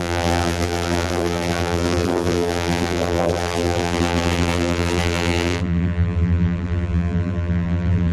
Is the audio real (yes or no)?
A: no